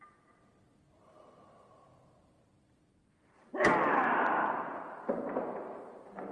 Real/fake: fake